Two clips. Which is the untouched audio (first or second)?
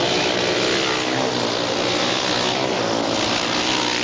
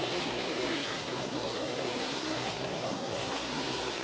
first